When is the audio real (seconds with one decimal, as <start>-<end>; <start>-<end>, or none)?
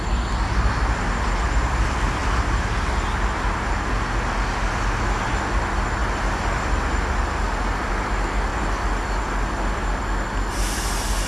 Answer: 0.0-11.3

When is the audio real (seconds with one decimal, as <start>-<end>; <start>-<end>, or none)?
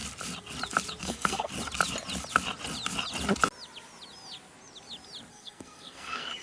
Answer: 0.0-1.0; 1.5-5.3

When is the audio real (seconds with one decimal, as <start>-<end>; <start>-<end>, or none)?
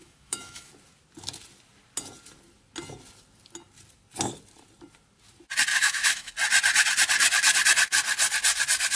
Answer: 0.7-5.7; 6.3-9.0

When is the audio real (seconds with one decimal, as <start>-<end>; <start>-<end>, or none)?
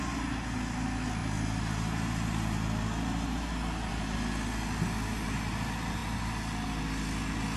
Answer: 0.0-7.6